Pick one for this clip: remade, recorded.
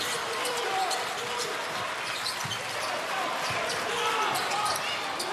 remade